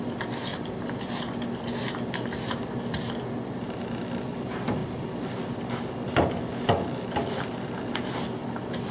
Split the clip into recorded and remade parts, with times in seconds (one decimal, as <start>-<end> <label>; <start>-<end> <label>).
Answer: 0.0-8.9 recorded